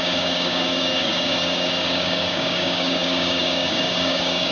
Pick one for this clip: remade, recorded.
remade